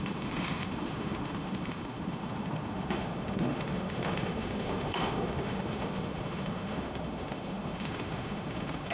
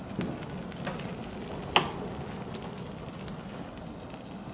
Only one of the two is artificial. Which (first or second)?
first